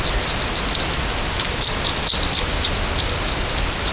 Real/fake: real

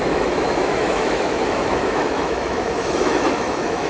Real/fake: fake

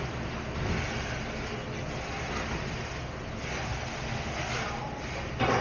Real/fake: real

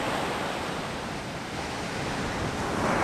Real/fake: real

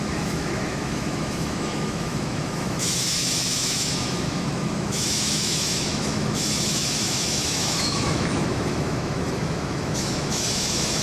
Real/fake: fake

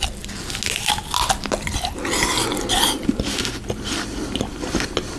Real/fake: real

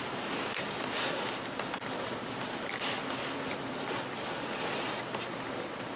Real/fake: real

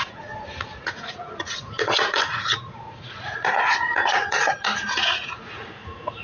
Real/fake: fake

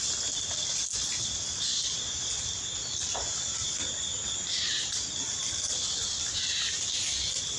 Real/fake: real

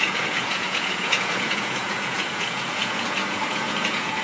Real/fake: fake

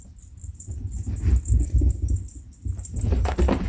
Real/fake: real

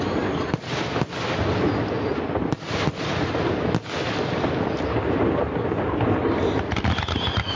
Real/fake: real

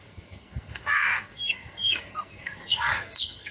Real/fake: fake